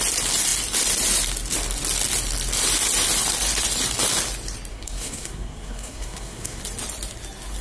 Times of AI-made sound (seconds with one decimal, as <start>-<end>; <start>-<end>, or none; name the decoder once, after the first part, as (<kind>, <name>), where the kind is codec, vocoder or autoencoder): 4.7-6.6 (codec, SNAC)